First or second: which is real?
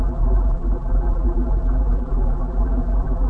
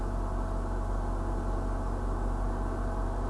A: second